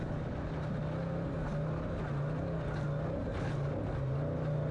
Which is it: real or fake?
real